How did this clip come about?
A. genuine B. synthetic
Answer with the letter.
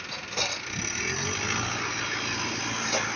A